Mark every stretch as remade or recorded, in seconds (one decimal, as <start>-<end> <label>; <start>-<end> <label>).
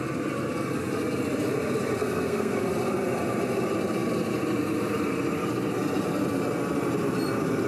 0.0-2.0 recorded; 2.0-2.6 remade; 2.6-7.7 recorded